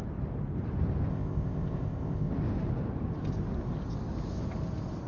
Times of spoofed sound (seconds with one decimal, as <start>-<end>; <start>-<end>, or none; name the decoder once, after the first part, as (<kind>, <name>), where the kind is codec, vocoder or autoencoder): 1.1-2.3 (codec, ZipCodec)